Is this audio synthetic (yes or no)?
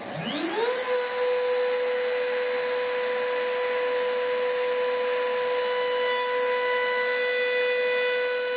no